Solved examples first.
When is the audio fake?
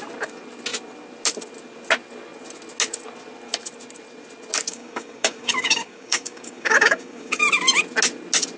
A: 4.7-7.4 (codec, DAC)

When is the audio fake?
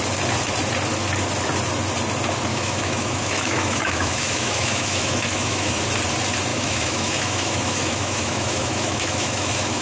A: 2.5-5.8 (autoencoder, DAC-VAE); 6.5-9.8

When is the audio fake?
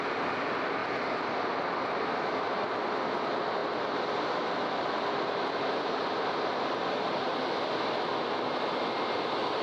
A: none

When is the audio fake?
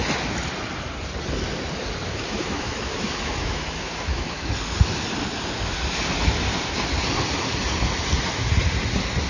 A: 2.0-4.5 (autoencoder, DAC-VAE)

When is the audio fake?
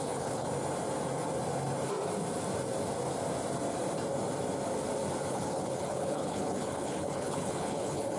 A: 0.0-0.5 (codec, HILCodec); 5.3-8.2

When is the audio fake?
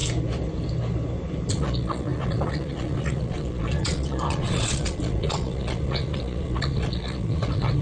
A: 1.5-7.8 (vocoder, Vocos)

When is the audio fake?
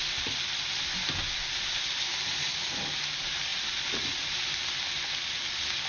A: none